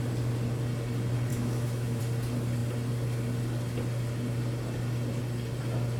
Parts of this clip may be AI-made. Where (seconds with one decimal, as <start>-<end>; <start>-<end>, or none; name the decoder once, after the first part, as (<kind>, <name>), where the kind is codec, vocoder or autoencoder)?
1.3-2.0 (autoencoder, DAC-VAE)